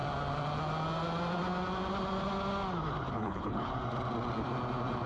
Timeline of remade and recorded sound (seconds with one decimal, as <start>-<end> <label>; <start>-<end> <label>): 0.0-3.1 recorded; 3.1-3.7 remade; 3.7-5.1 recorded